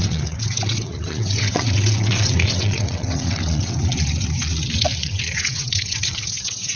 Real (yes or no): no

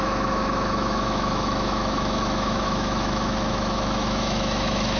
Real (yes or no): no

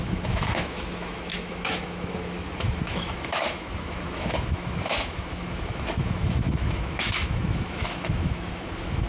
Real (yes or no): no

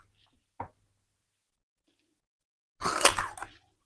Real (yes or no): yes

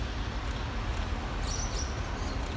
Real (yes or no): yes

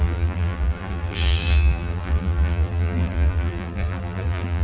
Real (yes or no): no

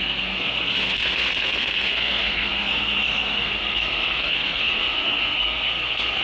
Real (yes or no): no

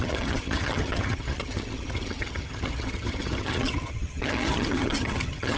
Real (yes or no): no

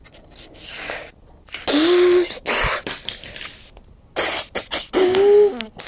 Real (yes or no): yes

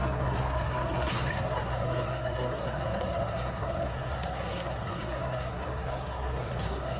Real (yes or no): no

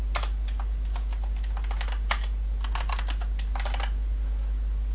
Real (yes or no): yes